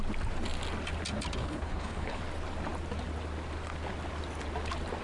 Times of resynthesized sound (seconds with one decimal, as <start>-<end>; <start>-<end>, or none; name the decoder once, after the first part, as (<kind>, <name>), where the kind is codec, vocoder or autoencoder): 1.4-2.2 (codec, HILCodec)